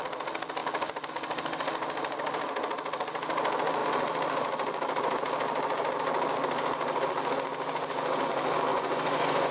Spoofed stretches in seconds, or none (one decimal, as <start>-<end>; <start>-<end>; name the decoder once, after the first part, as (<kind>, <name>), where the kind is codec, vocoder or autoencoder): 8.7-9.5 (vocoder, Vocos)